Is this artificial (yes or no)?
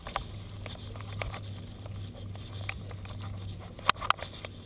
no